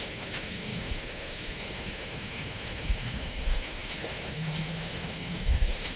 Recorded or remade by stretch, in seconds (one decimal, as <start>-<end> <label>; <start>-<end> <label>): 0.0-6.0 remade